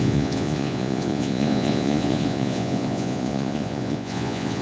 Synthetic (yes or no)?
yes